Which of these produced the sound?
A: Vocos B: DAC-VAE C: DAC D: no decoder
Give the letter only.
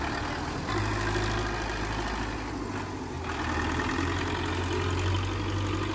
D